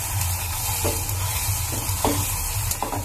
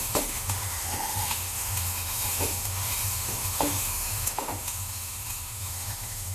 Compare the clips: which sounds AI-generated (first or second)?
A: second